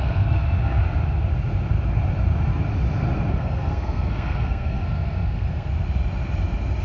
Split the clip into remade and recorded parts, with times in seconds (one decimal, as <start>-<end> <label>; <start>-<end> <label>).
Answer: 0.0-0.8 remade; 0.8-3.3 recorded; 3.3-5.7 remade; 5.7-6.8 recorded